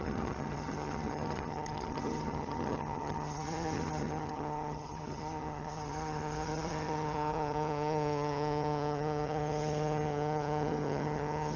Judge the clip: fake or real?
fake